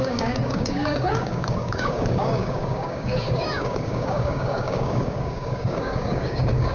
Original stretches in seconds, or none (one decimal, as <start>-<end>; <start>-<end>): none